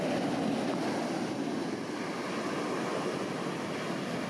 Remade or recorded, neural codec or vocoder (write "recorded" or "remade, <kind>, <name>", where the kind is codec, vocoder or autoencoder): recorded